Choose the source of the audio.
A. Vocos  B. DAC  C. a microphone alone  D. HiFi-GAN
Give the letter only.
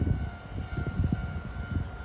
C